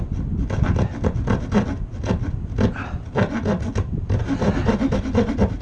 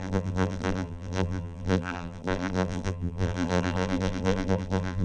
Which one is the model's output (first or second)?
second